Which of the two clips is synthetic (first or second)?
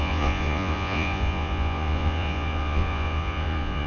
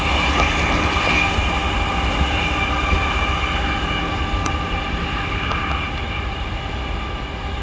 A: first